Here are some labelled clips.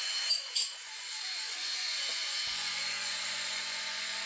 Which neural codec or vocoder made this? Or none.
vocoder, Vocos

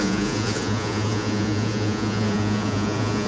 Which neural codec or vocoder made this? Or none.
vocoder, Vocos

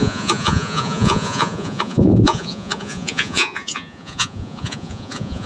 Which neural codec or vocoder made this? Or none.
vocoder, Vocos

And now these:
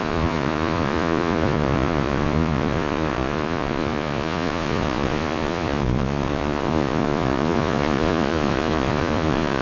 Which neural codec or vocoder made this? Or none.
vocoder, Vocos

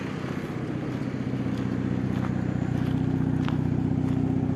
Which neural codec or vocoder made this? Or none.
none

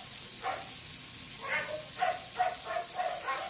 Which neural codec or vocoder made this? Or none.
none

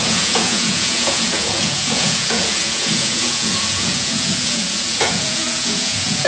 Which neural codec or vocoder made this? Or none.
vocoder, Vocos